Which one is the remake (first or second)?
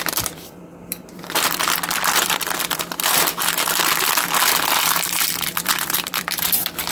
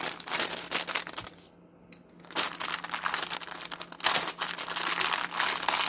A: first